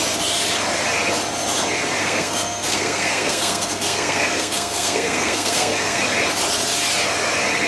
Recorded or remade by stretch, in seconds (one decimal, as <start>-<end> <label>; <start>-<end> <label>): 0.0-2.0 recorded; 2.0-6.0 remade; 6.0-7.7 recorded

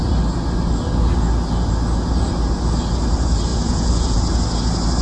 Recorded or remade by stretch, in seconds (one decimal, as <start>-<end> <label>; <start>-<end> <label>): 0.0-3.5 recorded; 3.5-4.2 remade; 4.2-5.0 recorded

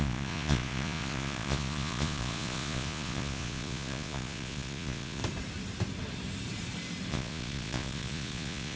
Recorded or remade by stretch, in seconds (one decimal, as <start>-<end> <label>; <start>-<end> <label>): 0.0-5.2 remade; 5.2-7.1 recorded; 7.1-8.8 remade

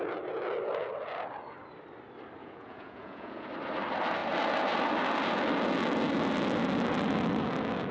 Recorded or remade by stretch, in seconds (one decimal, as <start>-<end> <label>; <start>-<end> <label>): 0.0-2.4 recorded; 2.4-3.5 remade; 3.5-7.9 recorded

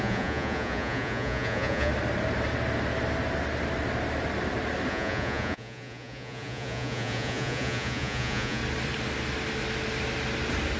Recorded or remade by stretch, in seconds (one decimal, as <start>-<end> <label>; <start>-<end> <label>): 0.0-1.9 remade; 1.9-4.9 recorded; 4.9-8.6 remade; 8.6-10.8 recorded

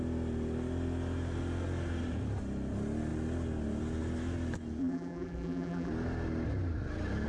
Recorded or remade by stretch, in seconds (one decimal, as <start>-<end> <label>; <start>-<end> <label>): 0.0-4.8 recorded; 4.8-5.9 remade; 5.9-7.3 recorded

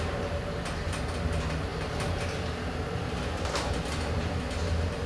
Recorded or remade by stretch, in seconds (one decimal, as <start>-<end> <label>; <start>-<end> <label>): 0.0-5.1 recorded

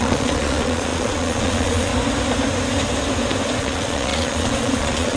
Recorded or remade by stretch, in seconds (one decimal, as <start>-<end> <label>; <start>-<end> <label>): 0.0-1.9 remade; 1.9-3.6 recorded; 3.6-5.2 remade